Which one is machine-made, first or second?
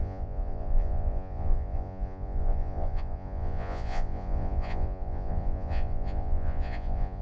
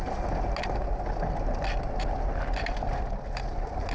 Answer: first